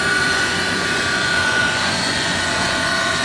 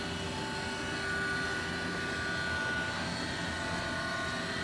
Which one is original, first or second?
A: second